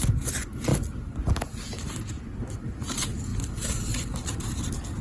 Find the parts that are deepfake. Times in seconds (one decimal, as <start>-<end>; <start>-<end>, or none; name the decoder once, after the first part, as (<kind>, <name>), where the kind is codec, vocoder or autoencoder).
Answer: 3.3-4.6 (vocoder, BigVGAN v2)